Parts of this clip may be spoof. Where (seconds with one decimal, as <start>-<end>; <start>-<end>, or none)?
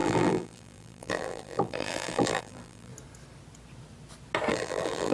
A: 0.0-2.9; 4.5-5.1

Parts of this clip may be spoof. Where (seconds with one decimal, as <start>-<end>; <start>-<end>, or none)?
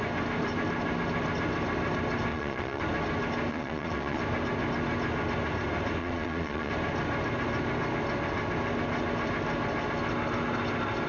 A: 2.3-2.8; 3.5-4.2; 6.0-6.7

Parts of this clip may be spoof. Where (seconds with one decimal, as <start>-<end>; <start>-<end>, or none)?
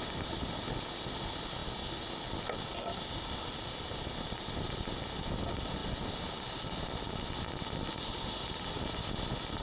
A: none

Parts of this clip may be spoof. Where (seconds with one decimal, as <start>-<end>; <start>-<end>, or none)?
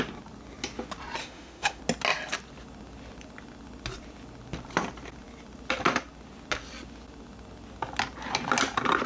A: 1.2-1.8